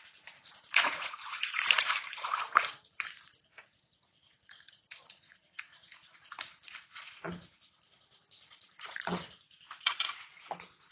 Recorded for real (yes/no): no